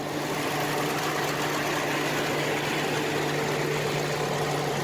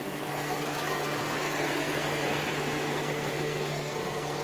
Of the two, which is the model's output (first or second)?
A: second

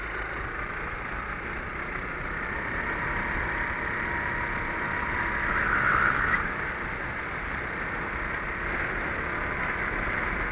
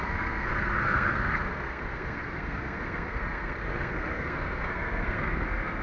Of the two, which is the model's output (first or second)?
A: second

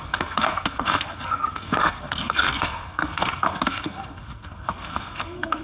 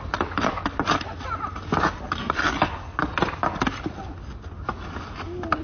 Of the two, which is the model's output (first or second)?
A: first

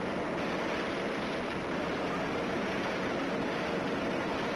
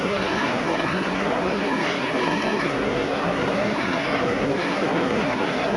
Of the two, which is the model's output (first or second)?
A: second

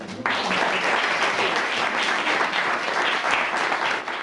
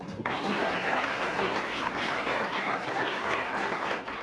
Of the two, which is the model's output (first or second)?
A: second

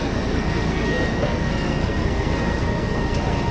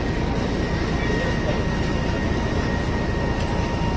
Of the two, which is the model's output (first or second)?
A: first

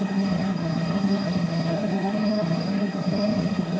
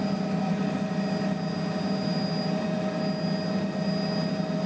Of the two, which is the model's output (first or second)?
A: first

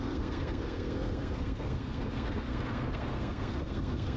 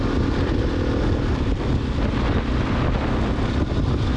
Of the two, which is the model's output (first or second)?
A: first